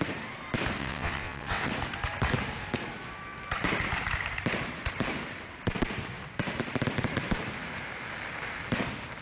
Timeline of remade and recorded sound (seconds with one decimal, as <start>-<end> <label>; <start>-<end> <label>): 0.0-0.8 recorded; 0.8-1.7 remade; 1.7-9.2 recorded